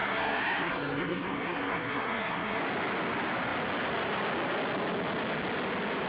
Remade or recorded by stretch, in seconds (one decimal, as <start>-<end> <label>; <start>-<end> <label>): 0.0-2.6 remade; 2.6-6.1 recorded